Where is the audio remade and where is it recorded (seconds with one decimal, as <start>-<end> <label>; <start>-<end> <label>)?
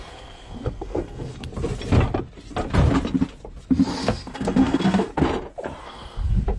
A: 0.0-1.5 remade; 1.5-4.0 recorded; 4.0-5.1 remade; 5.1-5.8 recorded; 5.8-6.6 remade